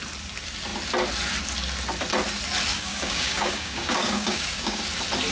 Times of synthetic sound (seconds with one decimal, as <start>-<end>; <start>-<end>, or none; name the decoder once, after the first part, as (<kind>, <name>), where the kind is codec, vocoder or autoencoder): 2.7-4.8 (codec, DAC)